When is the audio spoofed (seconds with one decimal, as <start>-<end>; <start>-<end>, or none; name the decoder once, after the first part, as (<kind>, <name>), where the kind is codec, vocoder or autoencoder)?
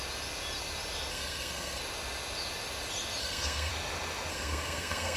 1.1-1.8 (codec, SNAC); 3.2-3.7; 4.3-5.2